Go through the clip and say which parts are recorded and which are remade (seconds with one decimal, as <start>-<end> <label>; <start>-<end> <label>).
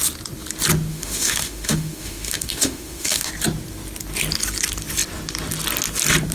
0.0-0.9 recorded; 0.9-3.3 remade; 3.3-6.3 recorded